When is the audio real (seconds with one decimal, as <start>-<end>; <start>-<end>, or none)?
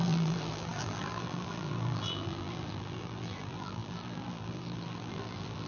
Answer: none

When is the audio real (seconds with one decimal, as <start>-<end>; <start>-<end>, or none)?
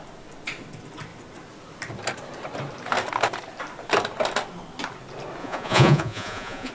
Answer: 0.0-5.4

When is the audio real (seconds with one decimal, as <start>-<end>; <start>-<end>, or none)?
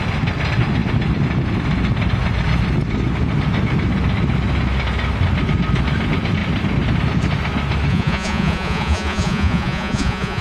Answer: 0.0-7.9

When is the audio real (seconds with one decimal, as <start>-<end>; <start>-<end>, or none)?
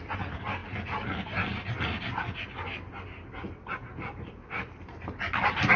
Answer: 0.0-5.8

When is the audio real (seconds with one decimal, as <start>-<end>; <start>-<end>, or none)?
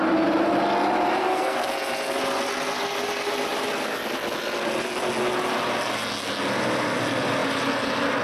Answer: 0.0-1.2; 1.7-8.2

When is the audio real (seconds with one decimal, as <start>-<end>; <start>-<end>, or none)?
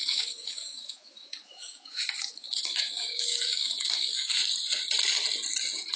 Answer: 4.4-6.0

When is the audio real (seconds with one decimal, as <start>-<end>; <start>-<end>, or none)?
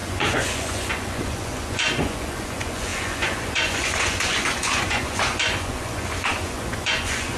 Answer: none